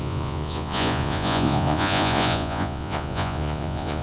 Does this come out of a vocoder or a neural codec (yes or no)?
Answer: yes